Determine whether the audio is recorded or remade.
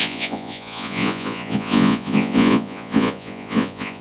remade